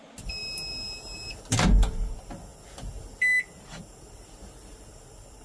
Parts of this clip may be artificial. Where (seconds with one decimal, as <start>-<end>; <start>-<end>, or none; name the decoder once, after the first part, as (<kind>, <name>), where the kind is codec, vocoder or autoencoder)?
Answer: none

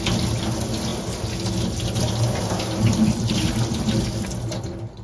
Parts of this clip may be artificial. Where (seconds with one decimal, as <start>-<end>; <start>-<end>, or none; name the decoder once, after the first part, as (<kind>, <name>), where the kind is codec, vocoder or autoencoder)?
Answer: none

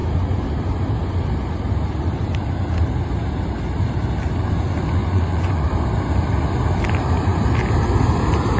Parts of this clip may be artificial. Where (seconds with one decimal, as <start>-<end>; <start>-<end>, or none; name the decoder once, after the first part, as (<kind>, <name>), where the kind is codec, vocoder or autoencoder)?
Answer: 5.0-5.7 (vocoder, Vocos)

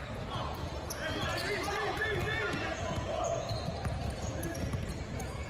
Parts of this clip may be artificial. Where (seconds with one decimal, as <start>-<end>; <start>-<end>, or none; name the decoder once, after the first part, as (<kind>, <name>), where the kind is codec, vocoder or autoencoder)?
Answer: 0.0-3.5 (vocoder, Vocos); 4.1-5.5